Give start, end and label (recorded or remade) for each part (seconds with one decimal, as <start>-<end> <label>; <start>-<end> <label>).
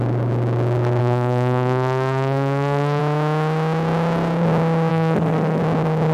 0.0-1.0 recorded; 1.0-3.0 remade; 3.0-4.9 recorded; 4.9-5.6 remade; 5.6-6.1 recorded